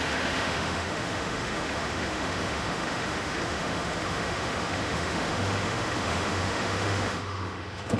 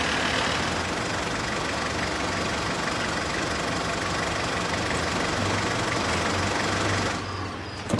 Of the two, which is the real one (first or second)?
second